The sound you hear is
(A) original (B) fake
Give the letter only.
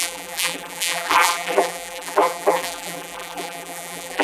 B